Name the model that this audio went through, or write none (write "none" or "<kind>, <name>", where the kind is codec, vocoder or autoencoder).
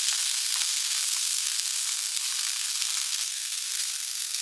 codec, SNAC